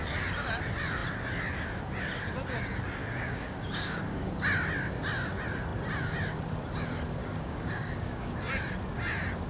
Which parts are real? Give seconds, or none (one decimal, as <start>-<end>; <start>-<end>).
0.0-3.0; 4.3-7.2; 8.4-9.5